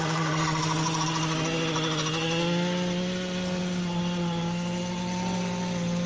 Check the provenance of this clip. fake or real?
real